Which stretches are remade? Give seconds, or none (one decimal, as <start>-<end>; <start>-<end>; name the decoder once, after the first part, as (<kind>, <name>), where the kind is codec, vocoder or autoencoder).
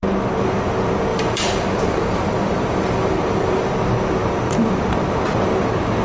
1.1-3.7 (vocoder, BigVGAN v2)